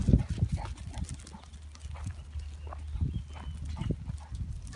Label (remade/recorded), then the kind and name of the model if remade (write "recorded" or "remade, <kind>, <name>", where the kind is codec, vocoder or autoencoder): recorded